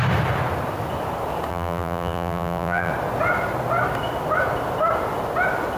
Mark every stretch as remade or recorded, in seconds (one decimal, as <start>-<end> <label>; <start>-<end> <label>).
0.0-1.5 recorded; 1.5-2.9 remade; 2.9-5.8 recorded